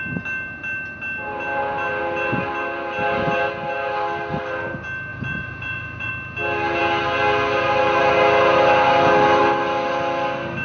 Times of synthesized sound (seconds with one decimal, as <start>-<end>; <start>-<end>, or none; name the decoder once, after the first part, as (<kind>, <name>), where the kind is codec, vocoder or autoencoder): 5.1-6.1 (vocoder, Vocos)

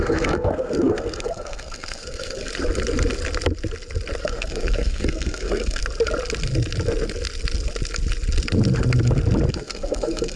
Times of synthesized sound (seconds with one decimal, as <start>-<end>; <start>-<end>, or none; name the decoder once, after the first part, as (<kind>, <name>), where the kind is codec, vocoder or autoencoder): 0.0-2.5 (codec, SNAC); 4.2-5.8; 9.5-10.4

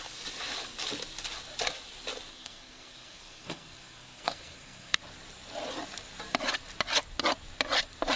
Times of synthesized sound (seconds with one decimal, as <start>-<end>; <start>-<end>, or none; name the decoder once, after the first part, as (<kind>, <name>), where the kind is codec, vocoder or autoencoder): 2.3-5.0 (codec, SNAC)

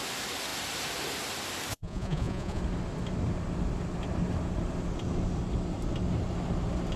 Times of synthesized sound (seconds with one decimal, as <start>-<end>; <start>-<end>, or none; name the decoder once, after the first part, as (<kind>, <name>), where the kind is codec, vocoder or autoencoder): 1.7-2.6 (vocoder, Vocos)